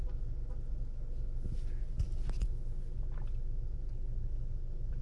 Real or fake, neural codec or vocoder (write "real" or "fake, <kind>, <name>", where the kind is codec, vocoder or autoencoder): real